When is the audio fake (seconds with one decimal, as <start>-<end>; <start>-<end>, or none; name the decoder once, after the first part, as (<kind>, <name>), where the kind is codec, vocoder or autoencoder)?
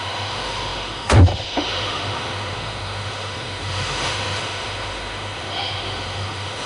0.0-6.7 (autoencoder, DAC-VAE)